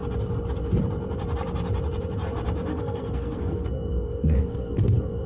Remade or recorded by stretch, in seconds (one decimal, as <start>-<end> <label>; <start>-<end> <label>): 0.0-2.7 recorded; 2.7-5.3 remade